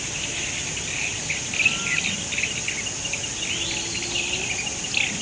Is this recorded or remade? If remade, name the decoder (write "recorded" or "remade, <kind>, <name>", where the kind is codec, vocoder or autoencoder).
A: recorded